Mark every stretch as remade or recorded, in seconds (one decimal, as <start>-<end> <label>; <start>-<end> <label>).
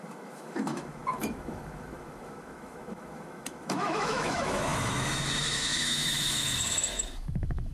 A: 0.0-7.7 remade